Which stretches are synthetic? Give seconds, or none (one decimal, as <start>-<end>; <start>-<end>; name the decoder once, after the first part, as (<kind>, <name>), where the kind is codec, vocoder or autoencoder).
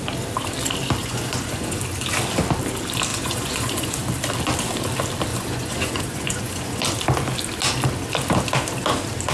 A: 1.0-1.8 (vocoder, Vocos); 3.1-4.0; 5.3-6.8